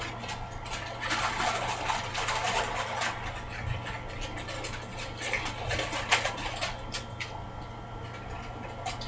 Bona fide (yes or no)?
yes